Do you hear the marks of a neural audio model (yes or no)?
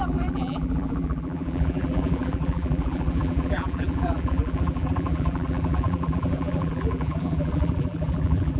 yes